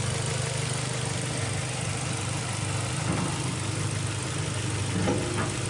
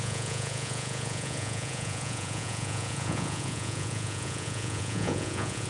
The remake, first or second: second